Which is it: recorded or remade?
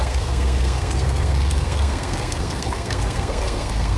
remade